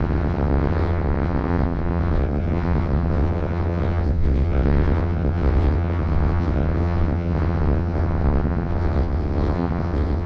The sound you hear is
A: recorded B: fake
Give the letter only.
B